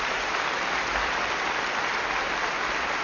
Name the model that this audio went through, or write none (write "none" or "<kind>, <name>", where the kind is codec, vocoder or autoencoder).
none